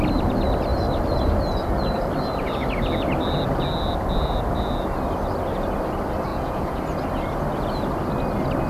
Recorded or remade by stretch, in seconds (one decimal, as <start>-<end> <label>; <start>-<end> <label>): 0.0-6.3 recorded; 6.3-6.8 remade; 6.8-8.7 recorded